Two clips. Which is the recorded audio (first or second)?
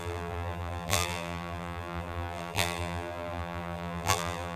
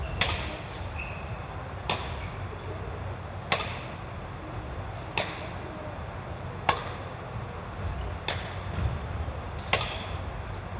second